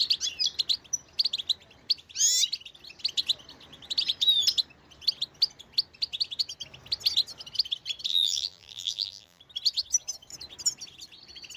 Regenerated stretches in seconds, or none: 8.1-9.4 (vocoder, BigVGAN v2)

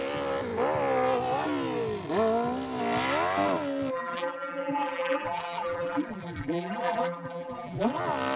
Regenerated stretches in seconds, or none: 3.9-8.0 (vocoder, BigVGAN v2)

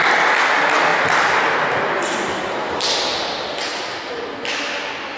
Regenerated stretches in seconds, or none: 3.7-4.2 (vocoder, BigVGAN v2)

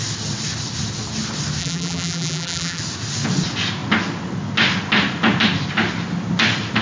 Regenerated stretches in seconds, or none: 1.6-2.8 (vocoder, BigVGAN v2)

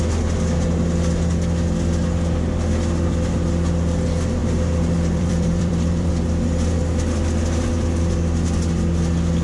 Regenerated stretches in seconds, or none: 4.4-6.1 (vocoder, BigVGAN v2)

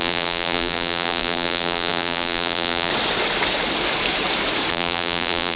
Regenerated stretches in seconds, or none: 0.0-2.9 (vocoder, BigVGAN v2); 4.7-5.6